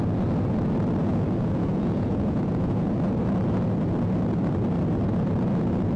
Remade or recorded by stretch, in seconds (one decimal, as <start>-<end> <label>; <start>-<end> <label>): 0.0-1.0 recorded; 1.0-2.9 remade; 2.9-6.0 recorded